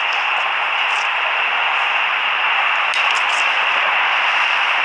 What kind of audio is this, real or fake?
fake